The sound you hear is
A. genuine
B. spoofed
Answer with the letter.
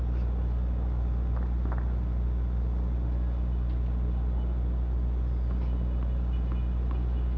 A